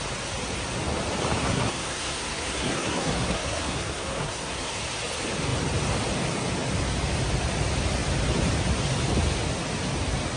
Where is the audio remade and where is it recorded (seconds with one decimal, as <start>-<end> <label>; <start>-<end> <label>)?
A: 0.0-1.4 recorded; 1.4-4.8 remade; 4.8-10.4 recorded